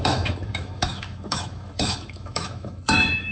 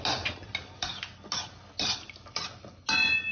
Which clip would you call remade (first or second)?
first